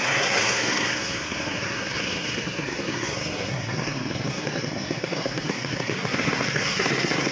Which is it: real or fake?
fake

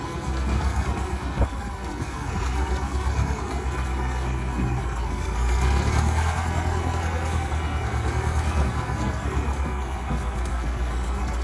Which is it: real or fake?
fake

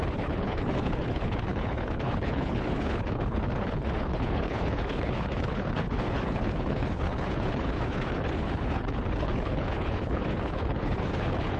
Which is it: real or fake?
fake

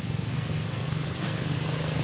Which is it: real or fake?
fake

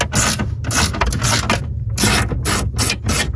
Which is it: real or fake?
real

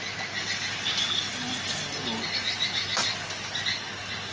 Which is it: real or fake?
real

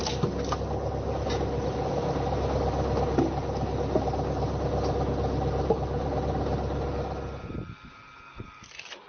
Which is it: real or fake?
real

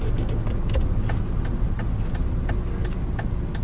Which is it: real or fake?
real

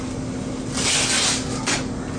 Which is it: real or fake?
real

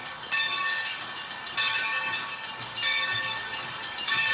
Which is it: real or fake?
fake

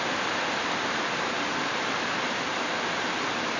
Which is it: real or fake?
real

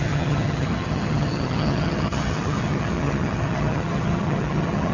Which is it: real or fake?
fake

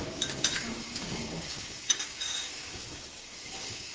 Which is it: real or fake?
fake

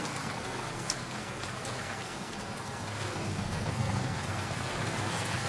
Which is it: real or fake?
fake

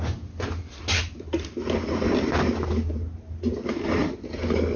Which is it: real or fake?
real